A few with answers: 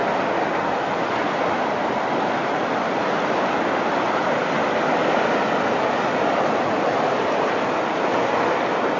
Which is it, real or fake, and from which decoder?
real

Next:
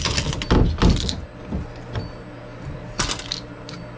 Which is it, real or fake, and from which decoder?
real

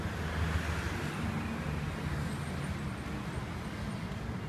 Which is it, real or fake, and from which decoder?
real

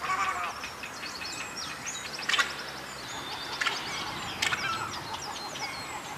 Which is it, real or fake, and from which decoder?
real